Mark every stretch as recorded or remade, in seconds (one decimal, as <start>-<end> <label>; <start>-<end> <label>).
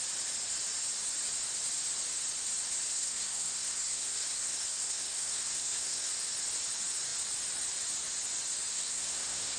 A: 0.0-2.9 recorded; 2.9-6.1 remade; 6.1-8.7 recorded; 8.7-9.6 remade